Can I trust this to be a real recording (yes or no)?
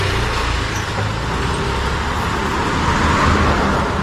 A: yes